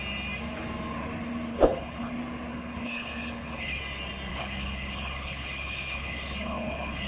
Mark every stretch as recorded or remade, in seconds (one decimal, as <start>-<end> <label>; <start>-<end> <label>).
0.0-1.5 recorded; 1.5-2.1 remade; 2.1-2.5 recorded; 2.5-3.8 remade; 3.8-4.3 recorded; 4.3-7.1 remade